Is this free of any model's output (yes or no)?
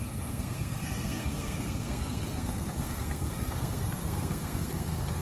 no